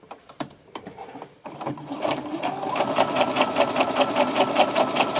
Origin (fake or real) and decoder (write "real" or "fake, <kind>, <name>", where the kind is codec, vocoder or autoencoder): fake, vocoder, BigVGAN v2